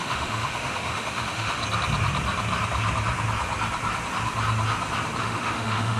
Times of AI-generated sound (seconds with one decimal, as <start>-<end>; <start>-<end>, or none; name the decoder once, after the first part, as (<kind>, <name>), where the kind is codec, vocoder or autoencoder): 0.0-1.6 (autoencoder, DAC-VAE); 5.2-6.0